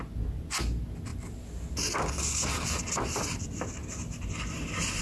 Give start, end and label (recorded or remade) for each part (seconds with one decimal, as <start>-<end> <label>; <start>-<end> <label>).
0.0-5.0 recorded